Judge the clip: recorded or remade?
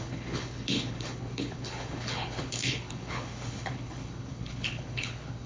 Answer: remade